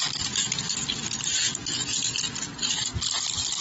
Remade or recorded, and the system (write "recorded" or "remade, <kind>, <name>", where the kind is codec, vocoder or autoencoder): recorded